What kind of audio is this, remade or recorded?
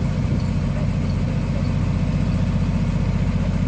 recorded